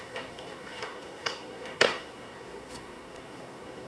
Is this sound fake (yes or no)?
yes